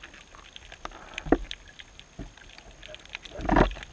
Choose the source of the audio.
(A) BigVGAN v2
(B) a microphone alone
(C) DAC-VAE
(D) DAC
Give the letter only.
B